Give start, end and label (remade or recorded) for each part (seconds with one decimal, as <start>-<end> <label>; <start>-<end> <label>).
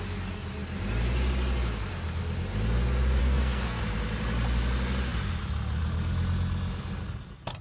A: 0.0-3.2 recorded; 3.2-3.8 remade; 3.8-7.6 recorded